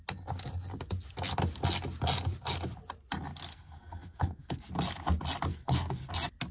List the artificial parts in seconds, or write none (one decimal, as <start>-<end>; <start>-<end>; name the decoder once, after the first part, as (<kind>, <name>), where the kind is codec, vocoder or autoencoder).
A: 3.5-4.7 (codec, SNAC); 5.5-6.1